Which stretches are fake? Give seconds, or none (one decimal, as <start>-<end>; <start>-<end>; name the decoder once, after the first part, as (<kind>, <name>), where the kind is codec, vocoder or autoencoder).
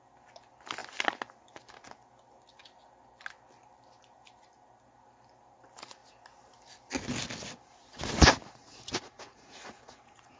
8.6-10.4 (vocoder, Vocos)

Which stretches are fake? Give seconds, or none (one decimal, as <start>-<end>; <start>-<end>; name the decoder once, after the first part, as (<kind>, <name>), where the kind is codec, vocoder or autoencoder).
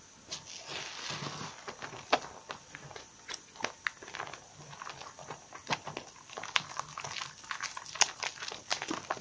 2.9-3.5 (vocoder, Vocos)